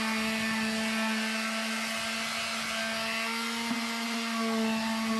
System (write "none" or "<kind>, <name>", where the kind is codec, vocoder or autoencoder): none